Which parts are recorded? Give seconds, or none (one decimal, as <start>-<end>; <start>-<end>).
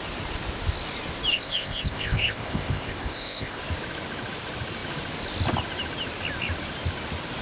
0.0-1.3; 3.6-7.4